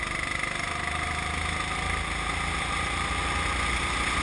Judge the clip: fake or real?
real